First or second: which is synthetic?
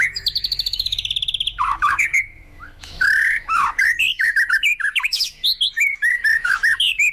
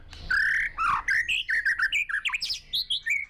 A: first